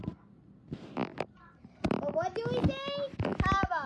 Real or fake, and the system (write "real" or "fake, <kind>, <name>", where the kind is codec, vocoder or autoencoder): real